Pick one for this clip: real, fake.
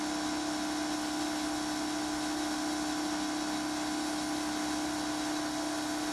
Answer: real